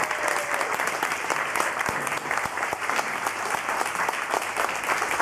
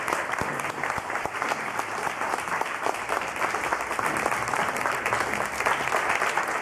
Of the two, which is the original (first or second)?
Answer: first